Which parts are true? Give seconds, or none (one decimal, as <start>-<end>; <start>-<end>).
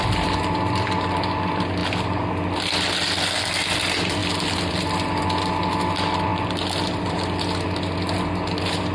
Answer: 0.0-8.9